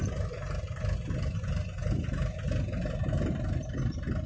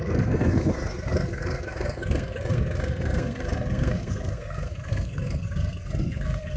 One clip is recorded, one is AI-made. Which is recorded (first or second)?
first